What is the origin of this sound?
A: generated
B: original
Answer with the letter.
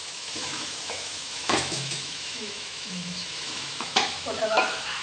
A